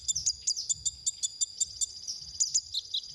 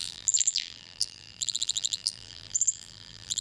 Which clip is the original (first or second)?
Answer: first